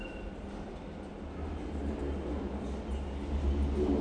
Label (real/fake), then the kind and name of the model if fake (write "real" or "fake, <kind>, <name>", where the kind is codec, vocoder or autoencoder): real